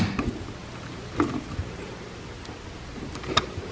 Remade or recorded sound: recorded